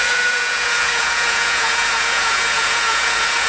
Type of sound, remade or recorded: remade